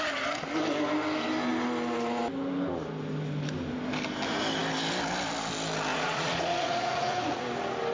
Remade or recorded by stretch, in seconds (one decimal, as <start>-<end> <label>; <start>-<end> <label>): 0.0-5.9 recorded; 5.9-7.4 remade; 7.4-7.9 recorded